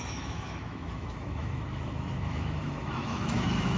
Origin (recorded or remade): remade